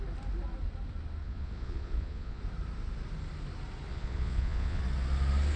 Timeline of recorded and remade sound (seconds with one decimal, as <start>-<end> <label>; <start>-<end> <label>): 0.0-1.2 recorded; 1.2-2.4 remade; 2.4-3.9 recorded; 3.9-4.8 remade; 4.8-5.6 recorded